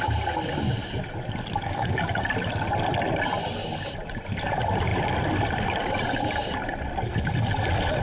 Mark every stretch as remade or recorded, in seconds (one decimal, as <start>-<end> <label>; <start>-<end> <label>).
0.0-1.6 recorded; 1.6-2.2 remade; 2.2-8.0 recorded